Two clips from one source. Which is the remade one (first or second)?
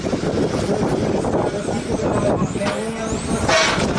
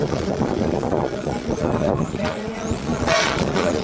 second